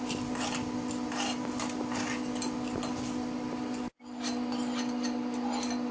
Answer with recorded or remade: recorded